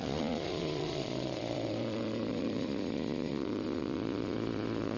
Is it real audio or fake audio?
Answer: fake